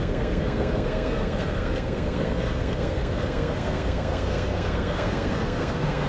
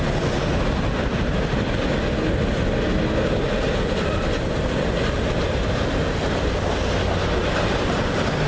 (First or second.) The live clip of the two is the second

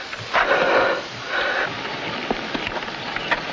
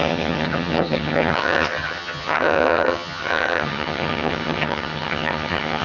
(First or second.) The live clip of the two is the first